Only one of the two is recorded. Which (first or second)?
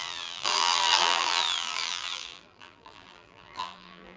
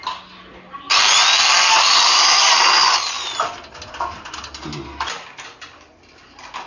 second